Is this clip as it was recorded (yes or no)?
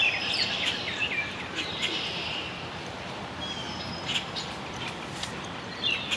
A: no